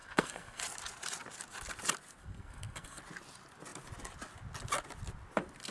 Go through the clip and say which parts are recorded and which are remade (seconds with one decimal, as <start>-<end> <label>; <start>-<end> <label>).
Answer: 0.0-0.6 remade; 0.6-2.2 recorded; 2.2-3.0 remade; 3.0-5.7 recorded

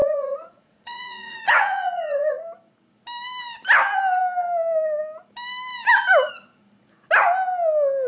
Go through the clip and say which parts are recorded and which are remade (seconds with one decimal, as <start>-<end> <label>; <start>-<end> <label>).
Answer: 0.0-2.4 remade; 2.4-8.1 recorded

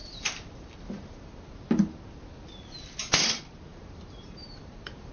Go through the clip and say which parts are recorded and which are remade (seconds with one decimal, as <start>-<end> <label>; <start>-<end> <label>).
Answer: 0.0-1.5 remade; 1.5-3.7 recorded; 3.7-5.1 remade

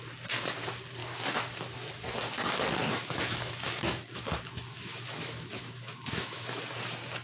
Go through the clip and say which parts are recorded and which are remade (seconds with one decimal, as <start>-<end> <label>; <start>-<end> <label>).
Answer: 0.0-1.0 recorded; 1.0-1.7 remade; 1.7-2.8 recorded; 2.8-6.6 remade; 6.6-7.2 recorded